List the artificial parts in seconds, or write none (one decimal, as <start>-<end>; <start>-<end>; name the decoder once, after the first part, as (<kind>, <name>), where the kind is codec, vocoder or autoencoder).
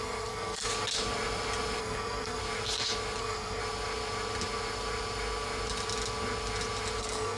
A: 0.0-0.7 (codec, SNAC); 1.8-2.4; 3.2-3.6; 7.0-7.4